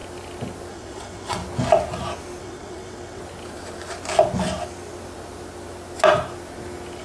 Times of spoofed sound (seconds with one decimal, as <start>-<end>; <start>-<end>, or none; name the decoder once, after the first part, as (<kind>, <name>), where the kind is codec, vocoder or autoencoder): 0.7-1.4 (vocoder, WaveNeXt); 2.4-3.2